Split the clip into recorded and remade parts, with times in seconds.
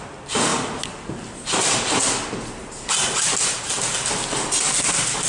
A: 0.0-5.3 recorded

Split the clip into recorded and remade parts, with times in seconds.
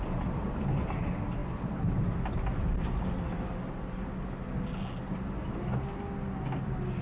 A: 0.0-7.0 recorded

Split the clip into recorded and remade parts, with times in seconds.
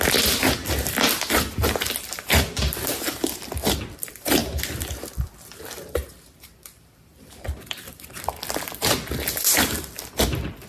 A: 0.0-10.7 recorded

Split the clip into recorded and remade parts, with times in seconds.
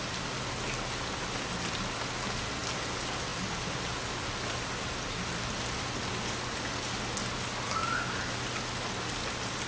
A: 0.0-9.7 recorded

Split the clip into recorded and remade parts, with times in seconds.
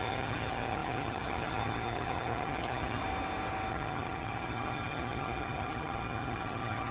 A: 0.0-3.0 remade; 3.0-3.7 recorded; 3.7-6.9 remade